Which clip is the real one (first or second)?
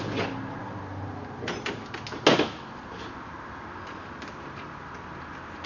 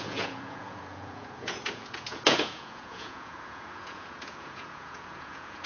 first